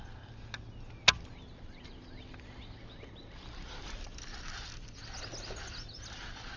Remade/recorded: recorded